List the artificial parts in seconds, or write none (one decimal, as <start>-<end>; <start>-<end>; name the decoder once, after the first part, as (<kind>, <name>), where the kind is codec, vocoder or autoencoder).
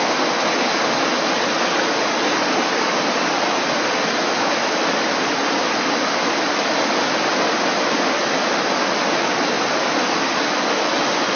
none